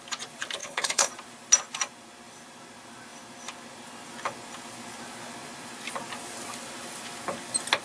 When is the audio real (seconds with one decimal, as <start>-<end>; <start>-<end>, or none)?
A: 0.0-0.6; 1.1-7.8